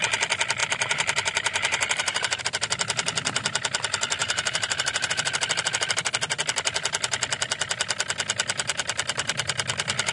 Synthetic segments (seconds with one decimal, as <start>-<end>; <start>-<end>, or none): 0.6-2.4; 4.2-5.1